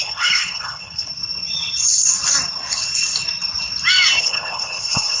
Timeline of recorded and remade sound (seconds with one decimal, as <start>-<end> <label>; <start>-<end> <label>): 0.0-1.1 remade; 1.1-4.2 recorded; 4.2-5.2 remade